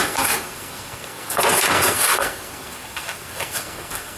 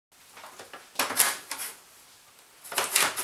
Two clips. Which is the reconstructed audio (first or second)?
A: first